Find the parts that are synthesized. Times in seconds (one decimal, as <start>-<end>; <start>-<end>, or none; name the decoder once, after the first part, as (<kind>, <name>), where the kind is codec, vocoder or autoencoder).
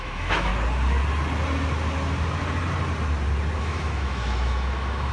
0.0-0.5 (autoencoder, DAC-VAE); 3.6-5.1